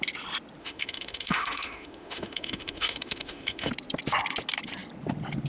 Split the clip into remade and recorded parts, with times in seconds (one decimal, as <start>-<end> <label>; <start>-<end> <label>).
0.0-0.6 recorded; 0.6-3.7 remade; 3.7-5.5 recorded